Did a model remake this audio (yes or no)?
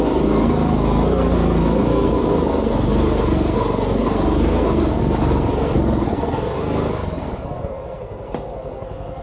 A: yes